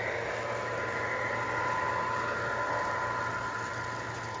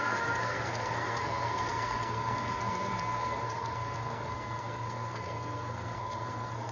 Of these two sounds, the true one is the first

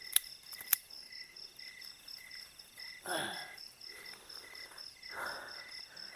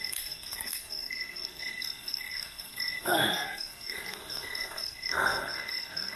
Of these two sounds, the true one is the first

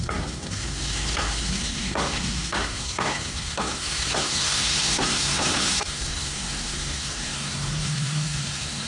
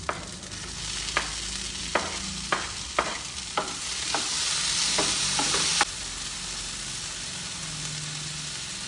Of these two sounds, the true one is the second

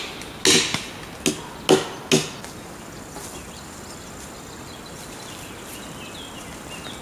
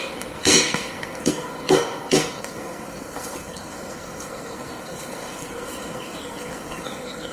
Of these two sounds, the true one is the first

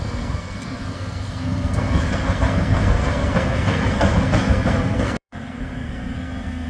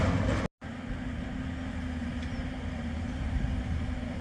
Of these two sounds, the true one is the second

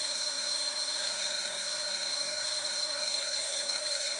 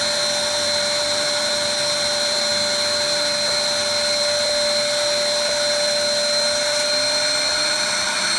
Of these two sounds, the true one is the second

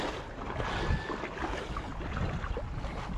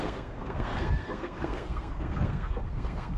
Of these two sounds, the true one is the first